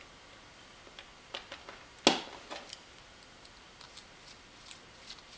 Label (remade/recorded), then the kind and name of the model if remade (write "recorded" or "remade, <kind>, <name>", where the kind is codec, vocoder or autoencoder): recorded